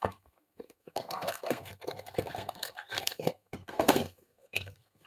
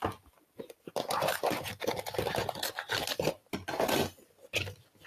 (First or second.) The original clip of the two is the second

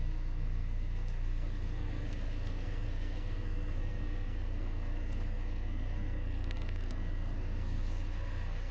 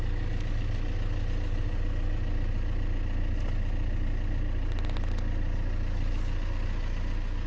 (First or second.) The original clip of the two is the second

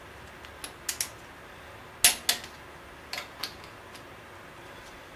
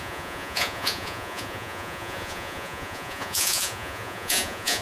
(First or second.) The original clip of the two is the first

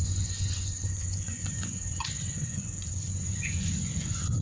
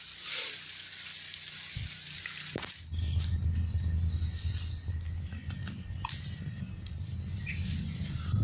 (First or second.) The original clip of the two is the second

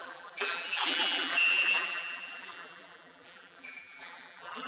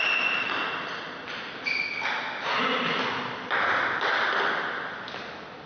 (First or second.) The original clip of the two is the second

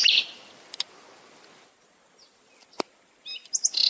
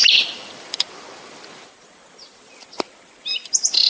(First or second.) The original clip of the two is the first